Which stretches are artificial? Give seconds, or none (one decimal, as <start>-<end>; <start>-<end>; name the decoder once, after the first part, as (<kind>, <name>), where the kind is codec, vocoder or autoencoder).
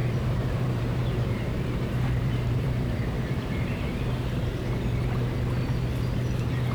0.0-4.0 (vocoder, BigVGAN v2)